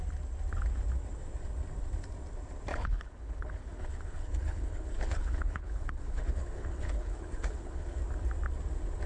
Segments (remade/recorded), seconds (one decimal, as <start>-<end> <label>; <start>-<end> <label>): 0.0-2.7 recorded; 2.7-8.0 remade; 8.0-9.1 recorded